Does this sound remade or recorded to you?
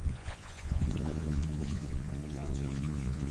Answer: remade